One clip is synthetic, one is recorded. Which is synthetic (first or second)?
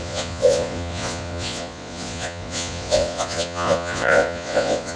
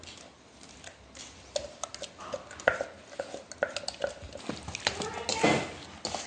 first